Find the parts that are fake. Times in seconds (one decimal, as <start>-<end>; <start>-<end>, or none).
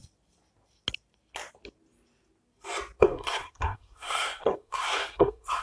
3.0-5.6